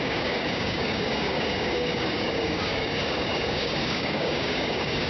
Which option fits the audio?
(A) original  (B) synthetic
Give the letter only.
B